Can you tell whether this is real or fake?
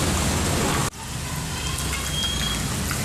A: real